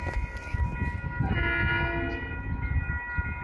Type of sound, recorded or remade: recorded